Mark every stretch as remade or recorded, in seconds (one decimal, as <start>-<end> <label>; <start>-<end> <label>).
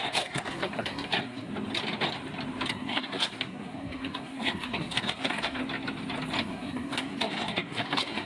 0.0-1.5 remade; 1.5-2.7 recorded; 2.7-5.6 remade; 5.6-6.4 recorded; 6.4-8.3 remade